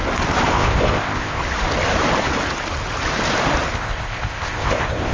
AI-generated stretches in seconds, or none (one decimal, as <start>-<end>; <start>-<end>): 0.5-1.4; 3.7-5.1